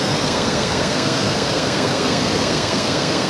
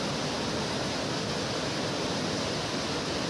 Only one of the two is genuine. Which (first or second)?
second